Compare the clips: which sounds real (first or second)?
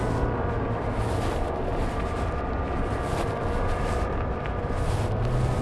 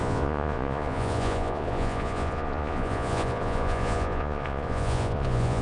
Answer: first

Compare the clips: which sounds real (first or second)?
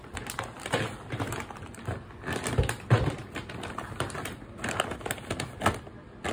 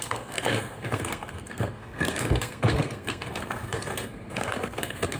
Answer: first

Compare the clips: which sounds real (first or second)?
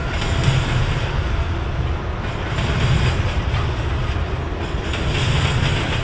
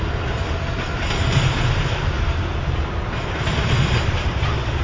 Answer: first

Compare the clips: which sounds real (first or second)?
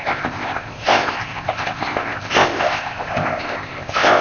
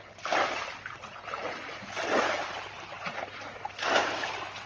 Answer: second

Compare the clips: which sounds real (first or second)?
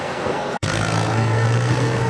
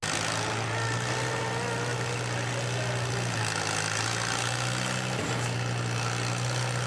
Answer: second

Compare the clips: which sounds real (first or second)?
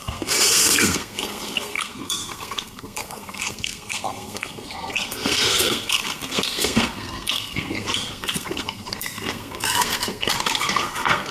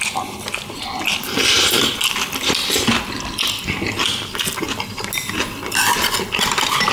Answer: second